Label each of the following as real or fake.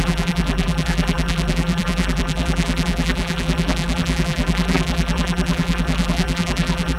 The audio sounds fake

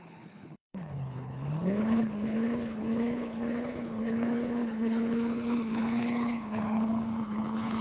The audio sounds fake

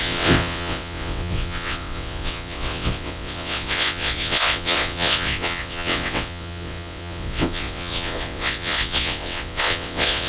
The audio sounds fake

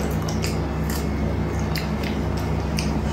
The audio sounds real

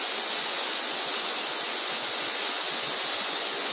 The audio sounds fake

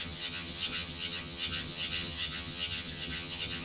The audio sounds fake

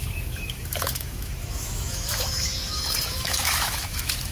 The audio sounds fake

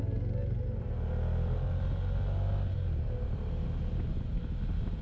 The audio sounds real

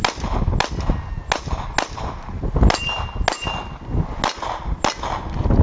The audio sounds real